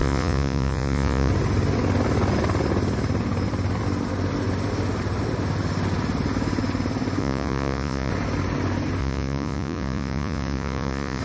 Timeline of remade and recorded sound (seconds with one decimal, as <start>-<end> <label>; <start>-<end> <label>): 0.0-1.3 remade; 1.3-7.2 recorded; 7.2-8.1 remade; 8.1-9.0 recorded; 9.0-11.2 remade